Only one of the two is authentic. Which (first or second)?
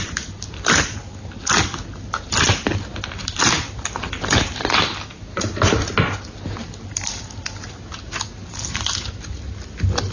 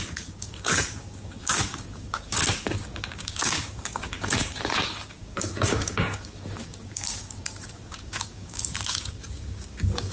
first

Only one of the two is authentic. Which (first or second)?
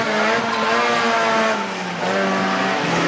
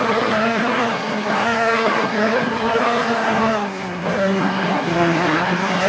first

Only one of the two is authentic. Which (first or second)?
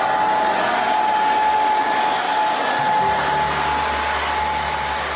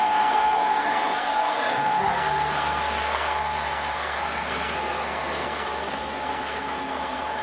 first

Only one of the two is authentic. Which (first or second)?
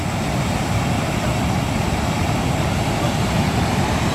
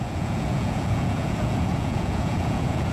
first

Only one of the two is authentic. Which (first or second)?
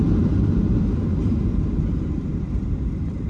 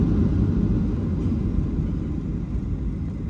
second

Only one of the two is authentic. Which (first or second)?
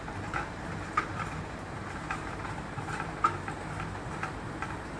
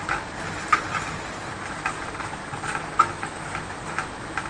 second